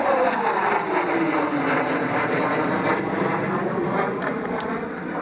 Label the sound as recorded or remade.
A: recorded